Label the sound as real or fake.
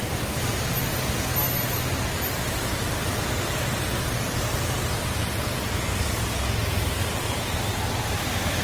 real